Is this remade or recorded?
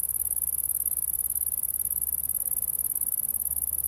recorded